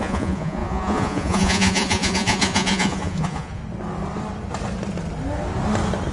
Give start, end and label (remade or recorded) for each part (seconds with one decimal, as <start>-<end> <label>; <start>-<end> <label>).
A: 0.0-3.6 remade; 3.6-6.1 recorded